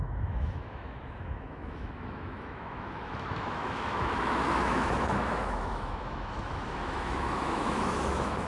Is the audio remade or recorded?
remade